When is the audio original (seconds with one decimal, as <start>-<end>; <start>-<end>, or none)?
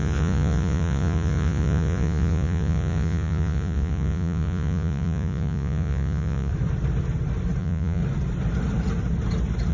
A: 6.5-7.6; 8.0-9.7